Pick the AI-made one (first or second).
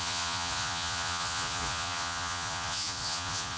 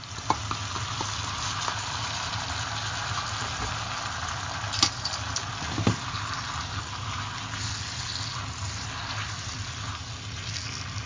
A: first